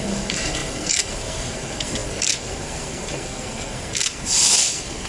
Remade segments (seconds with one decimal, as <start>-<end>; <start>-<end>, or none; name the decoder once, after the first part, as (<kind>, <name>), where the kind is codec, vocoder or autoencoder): 0.0-5.1 (codec, SNAC)